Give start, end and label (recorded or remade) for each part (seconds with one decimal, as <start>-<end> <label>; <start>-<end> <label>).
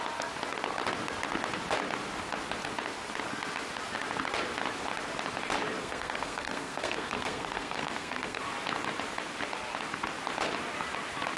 0.0-5.8 recorded; 5.8-8.4 remade; 8.4-11.4 recorded